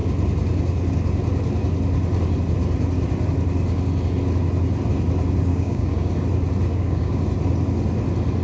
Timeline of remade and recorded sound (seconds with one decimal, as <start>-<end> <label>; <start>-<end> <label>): 0.0-5.5 recorded; 5.5-6.1 remade; 6.1-6.7 recorded; 6.7-7.2 remade; 7.2-8.4 recorded